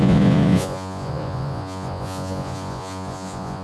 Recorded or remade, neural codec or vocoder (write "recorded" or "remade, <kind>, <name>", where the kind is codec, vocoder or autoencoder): remade, vocoder, Vocos